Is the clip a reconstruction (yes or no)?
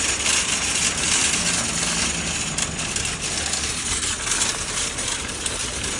no